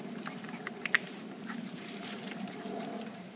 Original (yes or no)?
no